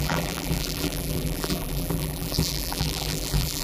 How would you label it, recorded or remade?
remade